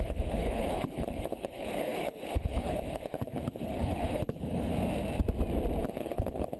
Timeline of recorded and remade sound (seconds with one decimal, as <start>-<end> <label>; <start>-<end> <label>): 0.0-4.7 remade; 4.7-5.8 recorded; 5.8-6.6 remade